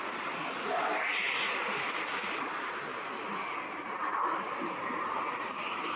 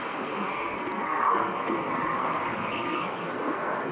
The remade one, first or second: second